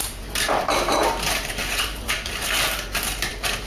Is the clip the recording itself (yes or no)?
no